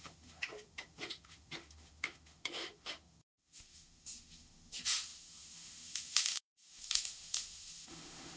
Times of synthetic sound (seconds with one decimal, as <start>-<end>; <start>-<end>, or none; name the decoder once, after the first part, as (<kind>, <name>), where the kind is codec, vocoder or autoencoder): 0.0-8.4 (autoencoder, DAC-VAE)